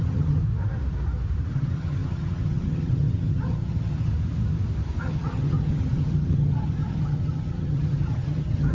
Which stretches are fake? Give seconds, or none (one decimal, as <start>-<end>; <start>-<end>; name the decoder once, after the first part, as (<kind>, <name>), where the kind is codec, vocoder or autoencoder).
0.0-0.4 (vocoder, HiFi-GAN); 1.5-4.1; 5.0-8.7